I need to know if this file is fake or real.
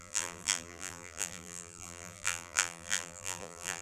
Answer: fake